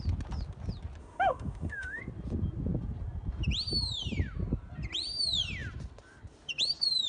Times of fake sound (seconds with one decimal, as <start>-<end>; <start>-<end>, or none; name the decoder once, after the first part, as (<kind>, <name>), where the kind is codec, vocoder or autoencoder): 1.0-2.0 (autoencoder, DAC-VAE)